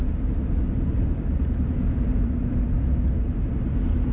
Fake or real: fake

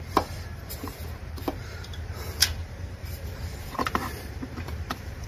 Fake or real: fake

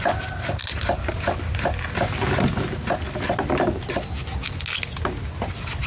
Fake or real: real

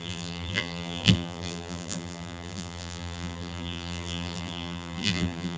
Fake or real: fake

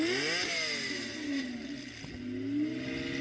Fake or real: real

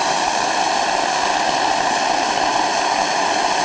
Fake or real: real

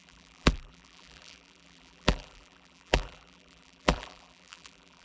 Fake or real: fake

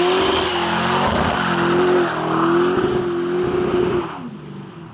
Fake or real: real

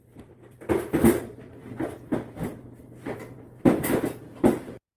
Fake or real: fake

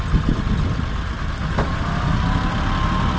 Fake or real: fake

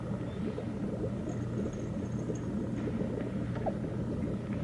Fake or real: real